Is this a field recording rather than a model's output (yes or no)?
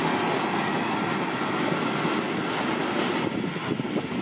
yes